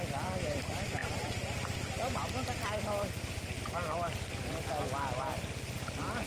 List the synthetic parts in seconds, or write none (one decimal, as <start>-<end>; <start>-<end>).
none